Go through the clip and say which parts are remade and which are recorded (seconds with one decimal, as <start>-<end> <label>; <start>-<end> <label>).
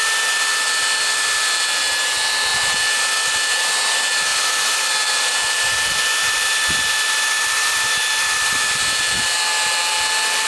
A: 0.0-4.3 recorded; 4.3-9.0 remade; 9.0-10.5 recorded